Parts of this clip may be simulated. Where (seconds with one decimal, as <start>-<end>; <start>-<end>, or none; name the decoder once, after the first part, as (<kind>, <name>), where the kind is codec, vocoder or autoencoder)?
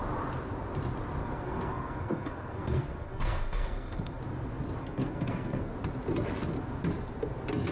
1.2-4.2 (codec, SNAC); 4.8-5.7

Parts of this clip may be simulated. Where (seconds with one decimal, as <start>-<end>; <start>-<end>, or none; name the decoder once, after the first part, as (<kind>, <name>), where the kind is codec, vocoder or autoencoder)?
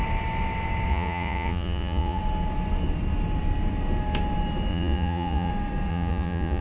0.9-2.2 (vocoder, Vocos); 4.7-5.5; 5.9-6.6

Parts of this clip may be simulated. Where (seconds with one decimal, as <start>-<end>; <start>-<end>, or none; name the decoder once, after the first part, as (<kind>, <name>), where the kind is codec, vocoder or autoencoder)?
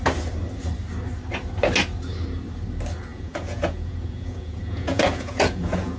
3.1-6.0 (vocoder, Vocos)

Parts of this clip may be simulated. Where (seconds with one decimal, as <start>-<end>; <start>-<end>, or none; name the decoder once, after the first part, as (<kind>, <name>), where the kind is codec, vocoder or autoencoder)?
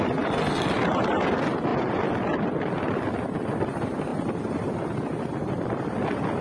none